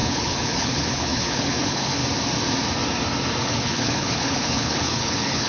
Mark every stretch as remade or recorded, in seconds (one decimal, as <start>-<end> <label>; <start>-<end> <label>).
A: 0.0-2.0 remade; 2.0-3.4 recorded; 3.4-5.5 remade